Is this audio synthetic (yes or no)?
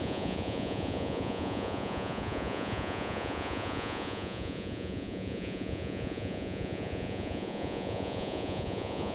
yes